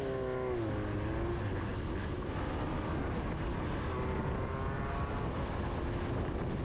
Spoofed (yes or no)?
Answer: no